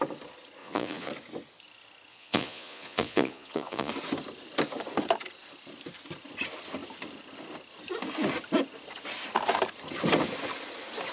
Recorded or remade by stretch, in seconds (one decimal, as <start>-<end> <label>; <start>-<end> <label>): 0.0-0.6 recorded; 0.6-1.1 remade; 1.1-2.1 recorded; 2.1-3.9 remade; 3.9-11.1 recorded